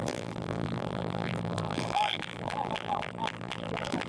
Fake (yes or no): yes